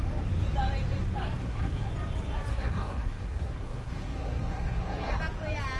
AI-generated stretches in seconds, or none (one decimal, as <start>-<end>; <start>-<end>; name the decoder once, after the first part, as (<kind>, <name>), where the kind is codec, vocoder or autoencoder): 1.4-1.9 (codec, SNAC); 2.5-5.2